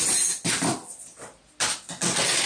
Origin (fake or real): real